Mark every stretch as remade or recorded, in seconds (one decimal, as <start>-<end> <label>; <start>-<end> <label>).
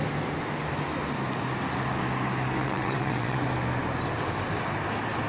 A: 0.0-2.6 recorded; 2.6-3.4 remade; 3.4-5.3 recorded